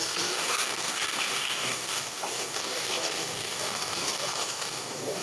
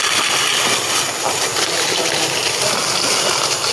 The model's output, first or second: first